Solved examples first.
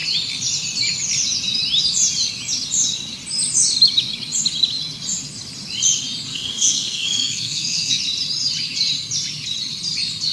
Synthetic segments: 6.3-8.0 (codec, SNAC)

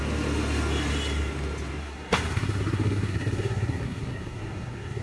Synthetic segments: 1.8-5.0 (codec, SNAC)

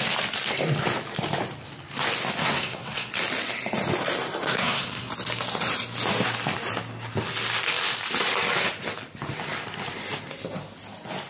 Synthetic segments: 2.4-3.1 (codec, SNAC); 4.5-5.1

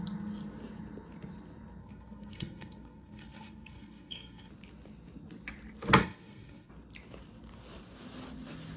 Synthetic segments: 1.8-4.5 (codec, SNAC); 6.0-6.7